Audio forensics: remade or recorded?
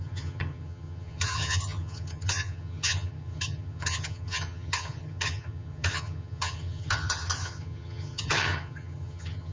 remade